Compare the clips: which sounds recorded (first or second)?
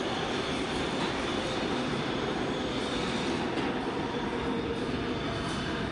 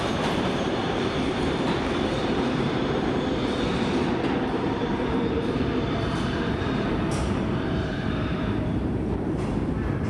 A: first